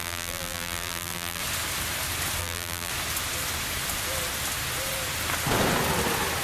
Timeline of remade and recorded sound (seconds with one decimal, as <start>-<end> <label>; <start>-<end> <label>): 0.0-1.4 remade; 1.4-2.4 recorded; 2.4-2.9 remade; 2.9-6.4 recorded